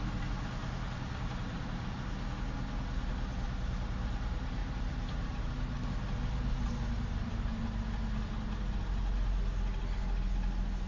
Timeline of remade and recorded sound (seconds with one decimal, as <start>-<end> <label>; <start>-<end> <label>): 0.0-0.6 recorded; 0.6-2.0 remade; 2.0-4.6 recorded; 4.6-5.5 remade; 5.5-10.9 recorded